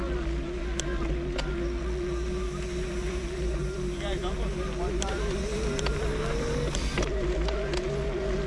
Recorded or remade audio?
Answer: recorded